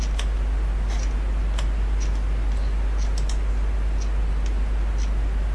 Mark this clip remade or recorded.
recorded